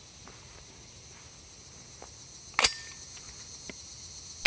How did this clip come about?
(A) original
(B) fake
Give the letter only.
A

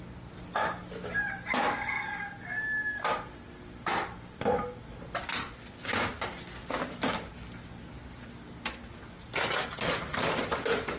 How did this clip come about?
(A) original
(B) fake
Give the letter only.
A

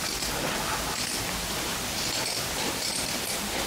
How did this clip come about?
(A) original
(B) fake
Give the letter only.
B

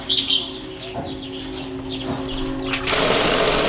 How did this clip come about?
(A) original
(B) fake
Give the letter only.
A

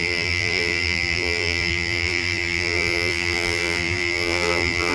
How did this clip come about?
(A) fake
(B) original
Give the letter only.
A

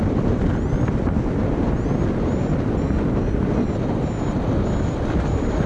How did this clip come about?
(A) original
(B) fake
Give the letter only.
A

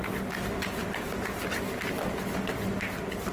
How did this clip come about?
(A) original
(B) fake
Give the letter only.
A